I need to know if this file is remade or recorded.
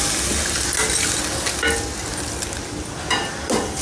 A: recorded